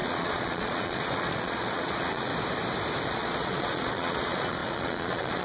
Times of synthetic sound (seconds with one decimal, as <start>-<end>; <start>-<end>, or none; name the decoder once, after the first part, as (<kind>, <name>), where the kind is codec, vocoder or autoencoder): 0.0-2.3 (vocoder, Vocos); 3.1-5.4

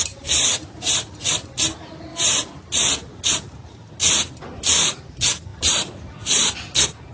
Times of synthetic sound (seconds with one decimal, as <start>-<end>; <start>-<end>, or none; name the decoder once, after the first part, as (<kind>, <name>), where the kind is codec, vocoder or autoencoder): 0.0-1.3 (vocoder, BigVGAN v2); 5.5-6.5

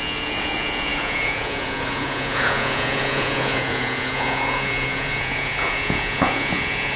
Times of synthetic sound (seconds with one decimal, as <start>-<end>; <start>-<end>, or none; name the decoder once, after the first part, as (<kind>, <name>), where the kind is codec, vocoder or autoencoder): 0.0-7.0 (vocoder, Vocos)

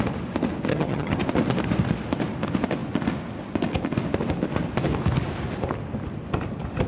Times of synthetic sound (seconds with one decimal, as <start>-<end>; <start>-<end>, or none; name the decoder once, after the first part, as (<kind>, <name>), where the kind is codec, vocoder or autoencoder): 0.7-1.2 (vocoder, HiFi-GAN)

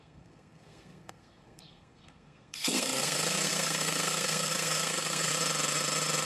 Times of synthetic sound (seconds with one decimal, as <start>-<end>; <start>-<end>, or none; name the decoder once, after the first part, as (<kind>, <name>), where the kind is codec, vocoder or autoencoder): 0.0-5.3 (codec, SNAC)

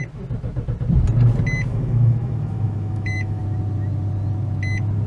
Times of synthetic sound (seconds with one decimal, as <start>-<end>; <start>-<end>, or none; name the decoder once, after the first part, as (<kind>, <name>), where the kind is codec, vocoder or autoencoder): 1.7-3.4 (autoencoder, DAC-VAE)